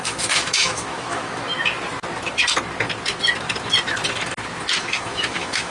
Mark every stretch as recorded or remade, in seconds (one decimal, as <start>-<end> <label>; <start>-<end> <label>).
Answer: 0.0-1.4 remade; 1.4-4.8 recorded; 4.8-5.7 remade